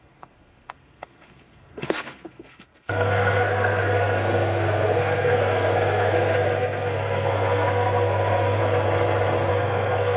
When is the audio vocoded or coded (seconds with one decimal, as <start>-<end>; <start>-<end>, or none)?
0.0-8.6; 9.5-10.2